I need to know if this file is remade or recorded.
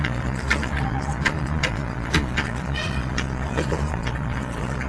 remade